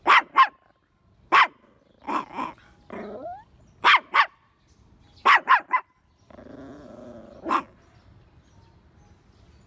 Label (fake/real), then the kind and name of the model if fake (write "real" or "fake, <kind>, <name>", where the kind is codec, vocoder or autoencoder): real